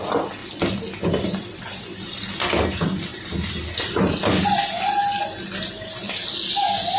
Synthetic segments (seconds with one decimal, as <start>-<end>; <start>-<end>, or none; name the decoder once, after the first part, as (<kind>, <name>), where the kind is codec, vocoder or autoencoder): none